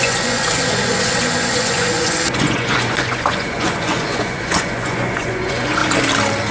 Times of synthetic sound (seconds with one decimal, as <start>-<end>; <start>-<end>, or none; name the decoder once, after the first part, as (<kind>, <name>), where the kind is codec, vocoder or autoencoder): 0.0-5.8 (vocoder, Vocos)